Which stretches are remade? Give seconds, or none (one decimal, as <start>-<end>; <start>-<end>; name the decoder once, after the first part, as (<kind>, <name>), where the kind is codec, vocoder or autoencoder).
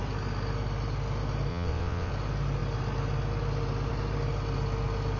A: 1.5-2.1 (vocoder, WaveNeXt)